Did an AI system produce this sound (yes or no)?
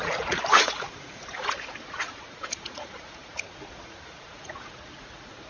yes